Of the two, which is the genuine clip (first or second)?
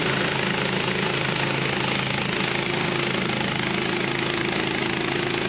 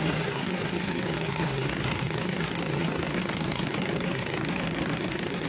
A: first